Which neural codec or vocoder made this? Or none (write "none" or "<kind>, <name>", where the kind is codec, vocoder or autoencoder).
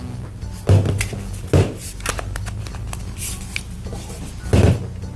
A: none